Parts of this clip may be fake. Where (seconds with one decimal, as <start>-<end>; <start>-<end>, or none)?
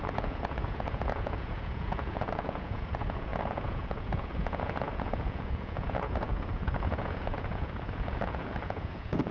0.0-9.3